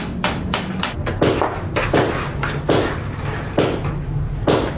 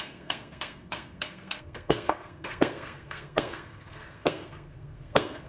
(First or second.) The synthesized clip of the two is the second